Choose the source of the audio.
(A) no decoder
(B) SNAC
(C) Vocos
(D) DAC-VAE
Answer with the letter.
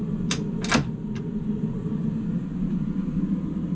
A